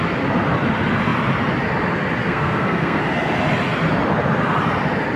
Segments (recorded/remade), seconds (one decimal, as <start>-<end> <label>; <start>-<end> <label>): 0.0-2.2 recorded; 2.2-3.0 remade; 3.0-5.2 recorded